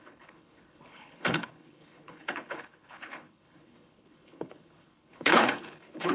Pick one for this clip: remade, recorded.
remade